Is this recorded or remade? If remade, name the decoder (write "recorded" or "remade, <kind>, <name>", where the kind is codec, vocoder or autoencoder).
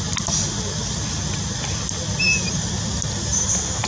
recorded